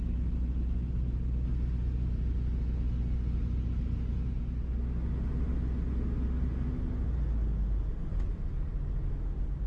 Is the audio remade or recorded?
recorded